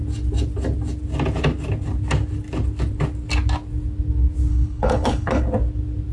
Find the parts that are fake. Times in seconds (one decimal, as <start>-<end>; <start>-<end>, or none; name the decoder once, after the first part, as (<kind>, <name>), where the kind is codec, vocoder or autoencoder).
4.5-5.4 (codec, HILCodec)